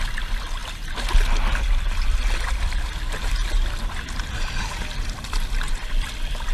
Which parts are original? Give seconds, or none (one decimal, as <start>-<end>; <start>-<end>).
0.6-4.5